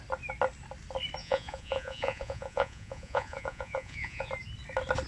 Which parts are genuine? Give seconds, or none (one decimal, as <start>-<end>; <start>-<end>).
0.0-1.2; 4.3-5.1